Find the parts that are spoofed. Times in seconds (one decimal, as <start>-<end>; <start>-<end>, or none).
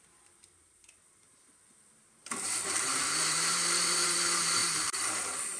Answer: 0.0-5.6